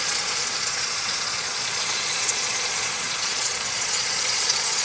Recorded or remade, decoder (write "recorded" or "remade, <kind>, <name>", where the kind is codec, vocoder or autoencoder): remade, vocoder, Vocos